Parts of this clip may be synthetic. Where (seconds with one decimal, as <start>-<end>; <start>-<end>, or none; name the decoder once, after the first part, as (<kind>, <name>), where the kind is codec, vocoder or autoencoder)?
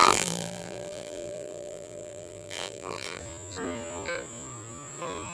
0.0-3.2 (vocoder, BigVGAN v2)